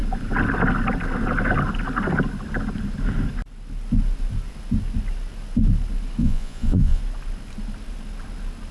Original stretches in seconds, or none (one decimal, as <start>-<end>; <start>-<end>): 0.0-6.2; 7.0-8.7